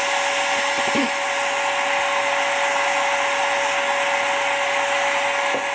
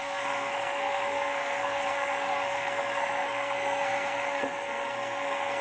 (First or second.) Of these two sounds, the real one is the first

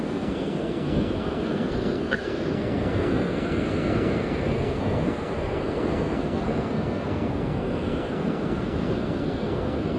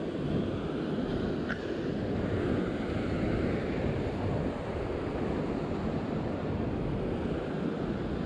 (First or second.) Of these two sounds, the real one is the second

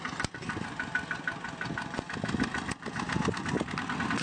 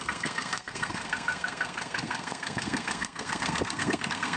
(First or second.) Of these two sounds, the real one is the first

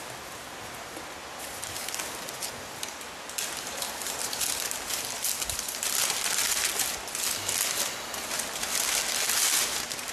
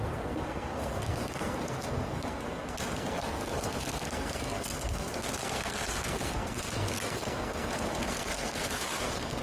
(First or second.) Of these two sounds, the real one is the first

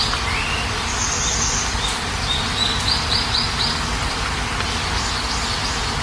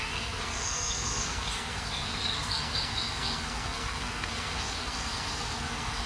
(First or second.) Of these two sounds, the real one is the first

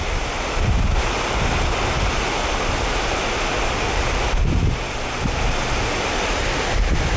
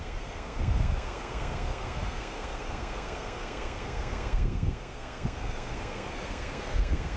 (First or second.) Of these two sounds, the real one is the first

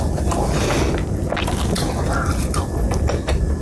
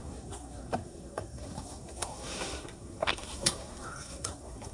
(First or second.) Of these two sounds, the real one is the first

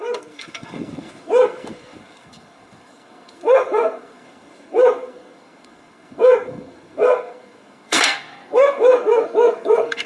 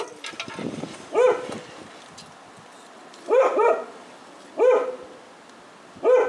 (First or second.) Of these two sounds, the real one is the second